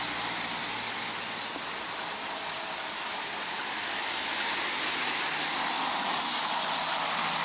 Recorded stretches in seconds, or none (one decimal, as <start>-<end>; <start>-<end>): 0.0-7.4